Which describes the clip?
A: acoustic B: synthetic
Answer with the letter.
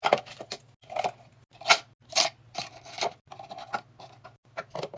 A